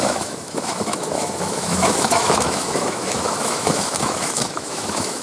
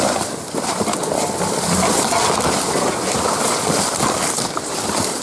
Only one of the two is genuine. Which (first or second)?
second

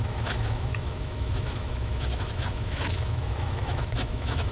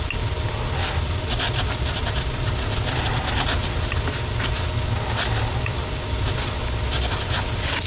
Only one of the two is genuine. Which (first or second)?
second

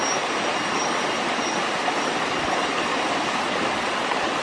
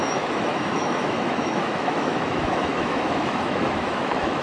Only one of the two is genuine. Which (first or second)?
first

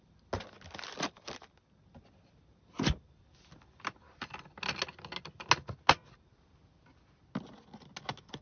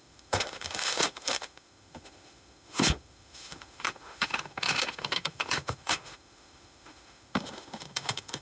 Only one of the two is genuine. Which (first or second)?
first